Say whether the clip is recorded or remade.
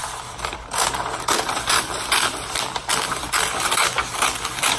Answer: remade